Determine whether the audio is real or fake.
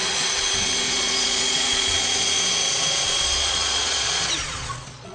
fake